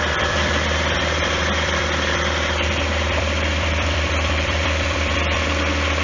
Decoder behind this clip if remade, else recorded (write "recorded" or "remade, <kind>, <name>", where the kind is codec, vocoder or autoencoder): remade, vocoder, BigVGAN v2